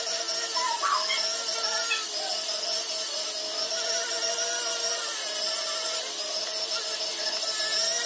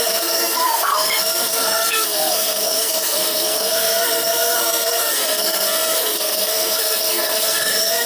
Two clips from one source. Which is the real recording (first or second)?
first